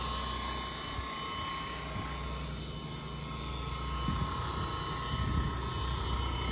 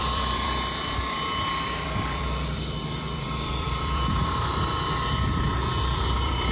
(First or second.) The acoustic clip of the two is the first